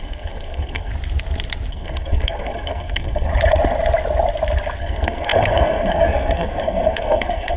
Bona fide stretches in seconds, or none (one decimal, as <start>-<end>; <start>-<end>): 0.9-1.7; 3.3-4.8